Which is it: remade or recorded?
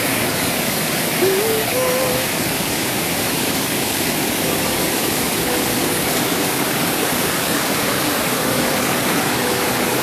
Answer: remade